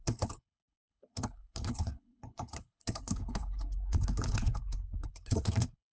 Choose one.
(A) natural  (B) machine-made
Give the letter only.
B